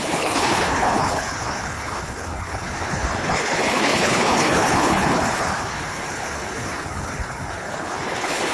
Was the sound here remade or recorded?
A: remade